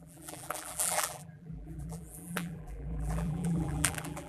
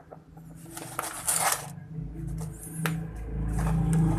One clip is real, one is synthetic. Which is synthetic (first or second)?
first